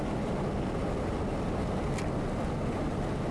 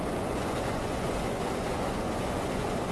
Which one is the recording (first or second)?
first